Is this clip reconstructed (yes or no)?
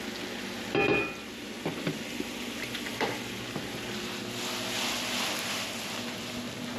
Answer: no